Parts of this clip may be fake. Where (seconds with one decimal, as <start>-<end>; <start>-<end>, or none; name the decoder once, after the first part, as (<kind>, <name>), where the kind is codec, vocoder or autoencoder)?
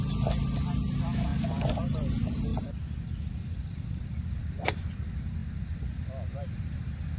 1.3-2.1 (vocoder, BigVGAN v2); 2.5-5.0; 5.4-6.5